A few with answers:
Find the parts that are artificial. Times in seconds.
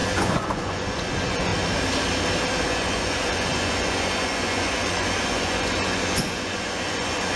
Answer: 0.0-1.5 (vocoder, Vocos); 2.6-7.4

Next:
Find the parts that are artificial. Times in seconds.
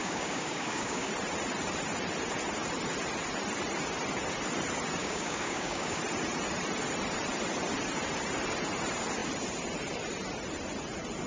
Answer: 0.0-1.1 (codec, DAC); 5.0-6.0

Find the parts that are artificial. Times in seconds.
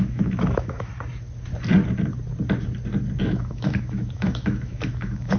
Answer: 0.0-0.9 (autoencoder, DAC-VAE); 3.2-5.4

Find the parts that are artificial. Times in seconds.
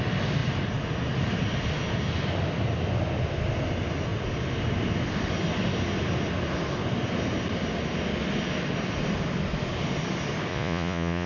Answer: 10.5-11.3 (vocoder, Vocos)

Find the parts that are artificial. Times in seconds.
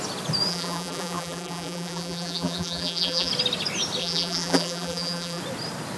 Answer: 0.5-3.3 (vocoder, BigVGAN v2); 4.0-5.4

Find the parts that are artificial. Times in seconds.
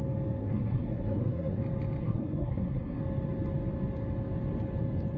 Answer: 0.4-1.6 (codec, SNAC); 2.0-3.0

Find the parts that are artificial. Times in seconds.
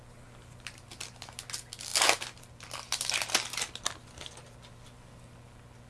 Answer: none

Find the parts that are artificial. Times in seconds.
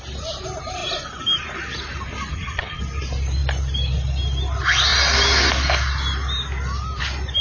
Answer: 2.3-2.8 (vocoder, HiFi-GAN)